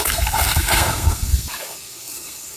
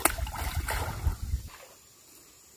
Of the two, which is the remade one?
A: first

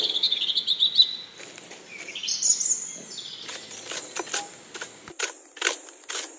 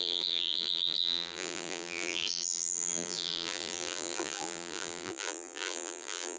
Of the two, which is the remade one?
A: second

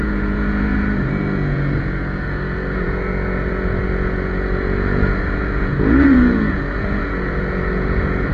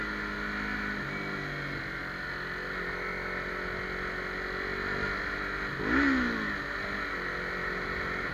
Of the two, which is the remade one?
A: first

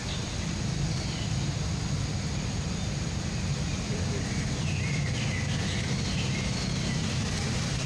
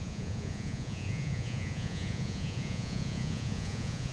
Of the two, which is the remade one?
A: second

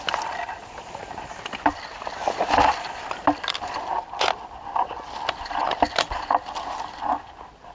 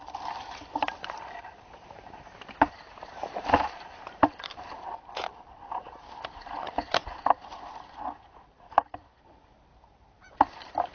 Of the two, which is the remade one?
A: second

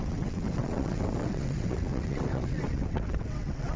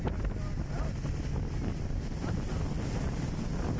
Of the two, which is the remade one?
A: first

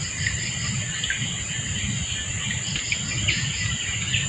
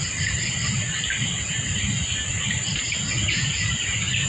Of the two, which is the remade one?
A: second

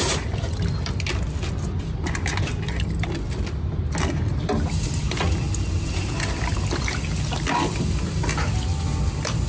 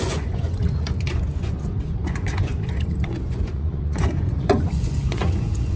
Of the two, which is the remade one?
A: second